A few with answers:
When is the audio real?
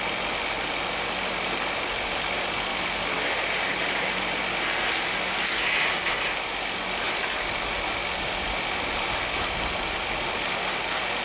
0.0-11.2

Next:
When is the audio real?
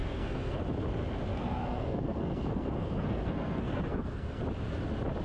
0.6-1.3; 4.4-5.2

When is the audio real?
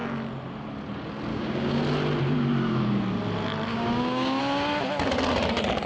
0.0-1.3; 1.8-3.7; 4.4-5.9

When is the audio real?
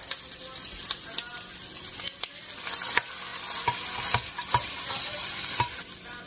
0.0-6.3